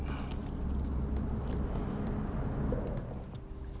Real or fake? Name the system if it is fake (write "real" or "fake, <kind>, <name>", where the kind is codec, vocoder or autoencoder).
real